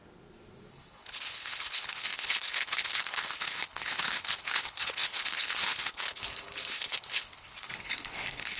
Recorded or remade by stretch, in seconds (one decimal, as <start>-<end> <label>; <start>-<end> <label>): 0.0-0.7 recorded; 0.7-6.2 remade; 6.2-6.7 recorded; 6.7-8.6 remade